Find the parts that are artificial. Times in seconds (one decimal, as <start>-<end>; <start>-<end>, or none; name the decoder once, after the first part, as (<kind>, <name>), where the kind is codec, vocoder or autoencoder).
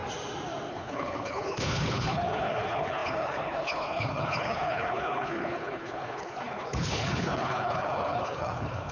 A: 0.7-8.9 (codec, HILCodec)